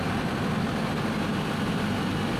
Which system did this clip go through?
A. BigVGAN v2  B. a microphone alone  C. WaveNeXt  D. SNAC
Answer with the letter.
B